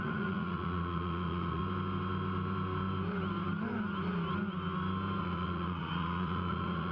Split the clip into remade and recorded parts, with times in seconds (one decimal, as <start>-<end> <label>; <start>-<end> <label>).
0.0-1.6 remade; 1.6-5.2 recorded; 5.2-6.9 remade